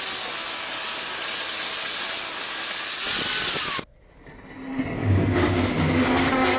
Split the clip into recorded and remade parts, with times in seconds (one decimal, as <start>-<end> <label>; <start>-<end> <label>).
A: 0.0-5.0 recorded; 5.0-6.6 remade